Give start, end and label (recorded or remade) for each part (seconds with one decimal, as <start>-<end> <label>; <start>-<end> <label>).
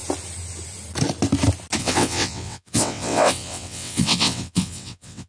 0.0-1.8 recorded; 1.8-5.3 remade